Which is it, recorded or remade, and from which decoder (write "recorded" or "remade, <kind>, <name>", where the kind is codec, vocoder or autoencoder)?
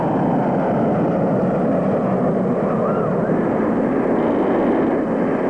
recorded